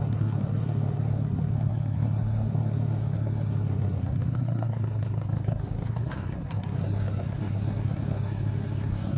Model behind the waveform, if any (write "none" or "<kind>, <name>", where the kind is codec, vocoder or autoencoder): codec, SNAC